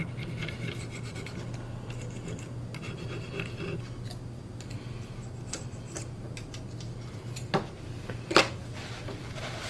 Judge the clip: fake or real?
real